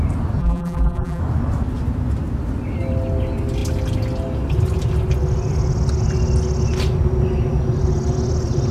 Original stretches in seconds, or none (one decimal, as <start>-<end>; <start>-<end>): 0.0-0.4; 1.2-8.7